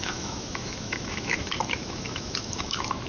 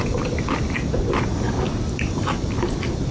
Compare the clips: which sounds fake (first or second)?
first